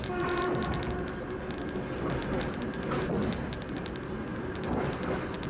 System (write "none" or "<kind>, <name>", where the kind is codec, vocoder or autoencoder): none